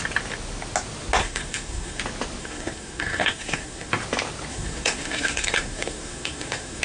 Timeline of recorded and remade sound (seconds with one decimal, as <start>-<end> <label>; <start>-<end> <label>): 0.0-1.2 recorded; 1.2-2.0 remade; 2.0-2.4 recorded; 2.4-3.9 remade; 3.9-4.5 recorded; 4.5-6.8 remade